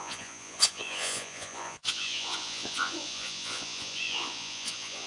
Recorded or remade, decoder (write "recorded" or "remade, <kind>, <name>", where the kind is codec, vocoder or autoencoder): remade, vocoder, Vocos